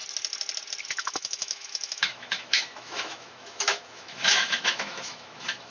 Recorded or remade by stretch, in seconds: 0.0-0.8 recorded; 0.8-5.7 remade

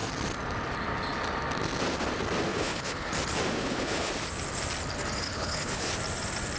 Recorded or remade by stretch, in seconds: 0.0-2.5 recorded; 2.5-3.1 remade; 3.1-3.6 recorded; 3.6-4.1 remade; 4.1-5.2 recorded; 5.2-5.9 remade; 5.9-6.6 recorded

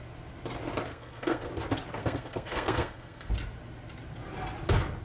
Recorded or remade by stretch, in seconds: 0.0-0.9 recorded; 0.9-1.5 remade; 1.5-2.0 recorded; 2.0-3.3 remade; 3.3-5.0 recorded

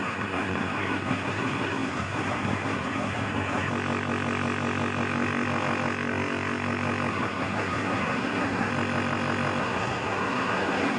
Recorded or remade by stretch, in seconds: 0.0-3.7 remade; 3.7-7.1 recorded; 7.1-8.7 remade; 8.7-9.6 recorded; 9.6-11.0 remade

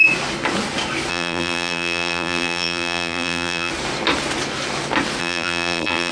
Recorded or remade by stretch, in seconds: 0.0-1.1 recorded; 1.1-3.7 remade; 3.7-5.2 recorded; 5.2-6.1 remade